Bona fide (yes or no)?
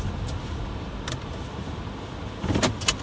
yes